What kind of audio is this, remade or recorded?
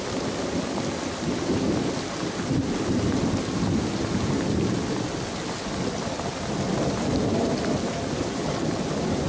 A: recorded